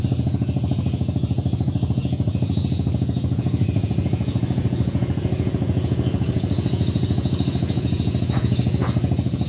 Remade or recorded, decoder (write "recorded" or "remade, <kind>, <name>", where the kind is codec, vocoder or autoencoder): remade, vocoder, Vocos